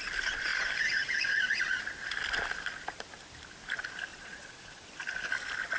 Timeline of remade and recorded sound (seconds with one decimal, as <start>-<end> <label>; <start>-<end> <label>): 0.0-4.1 recorded; 4.1-4.9 remade; 4.9-5.8 recorded